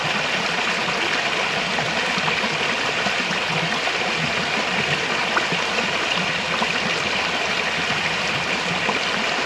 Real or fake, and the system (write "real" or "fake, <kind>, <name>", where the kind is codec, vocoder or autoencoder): real